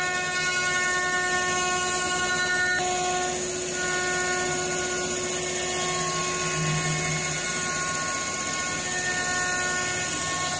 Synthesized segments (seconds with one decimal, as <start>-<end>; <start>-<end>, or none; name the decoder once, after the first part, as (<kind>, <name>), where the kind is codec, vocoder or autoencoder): none